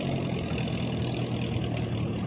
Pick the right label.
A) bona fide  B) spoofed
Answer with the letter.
A